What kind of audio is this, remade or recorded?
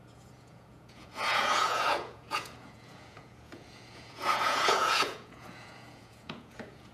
remade